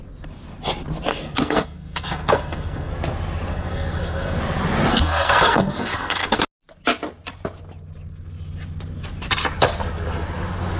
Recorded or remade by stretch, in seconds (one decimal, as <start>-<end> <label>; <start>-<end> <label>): 0.0-1.1 recorded; 1.1-2.9 remade; 2.9-3.5 recorded; 3.5-4.4 remade; 4.4-4.9 recorded; 4.9-6.4 remade; 6.4-10.8 recorded